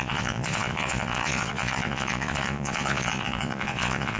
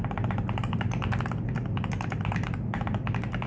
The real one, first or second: second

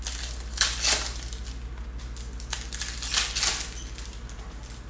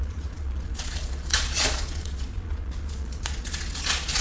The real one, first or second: first